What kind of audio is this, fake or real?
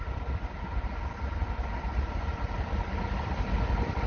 real